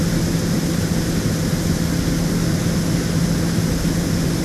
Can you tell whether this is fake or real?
real